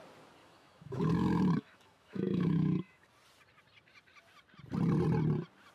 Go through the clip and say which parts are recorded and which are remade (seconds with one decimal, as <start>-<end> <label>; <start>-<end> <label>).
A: 0.0-0.4 recorded; 0.4-3.1 remade; 3.1-5.7 recorded